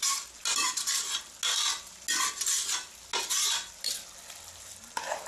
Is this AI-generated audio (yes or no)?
no